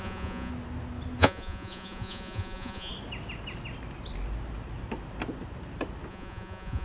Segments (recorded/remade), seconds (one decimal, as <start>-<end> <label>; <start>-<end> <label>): 0.0-0.5 remade; 0.5-1.2 recorded; 1.2-2.9 remade; 2.9-6.1 recorded; 6.1-6.8 remade